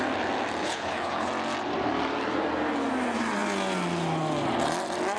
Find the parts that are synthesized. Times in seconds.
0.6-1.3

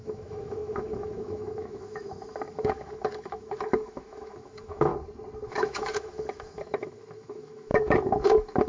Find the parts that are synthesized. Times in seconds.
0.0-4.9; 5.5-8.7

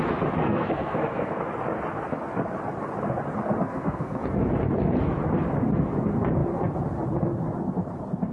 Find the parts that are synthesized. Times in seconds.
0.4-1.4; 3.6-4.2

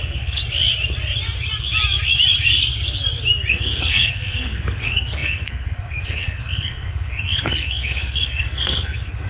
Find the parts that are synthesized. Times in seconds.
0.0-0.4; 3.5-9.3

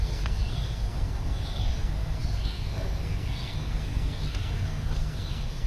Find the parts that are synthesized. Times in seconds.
0.0-5.7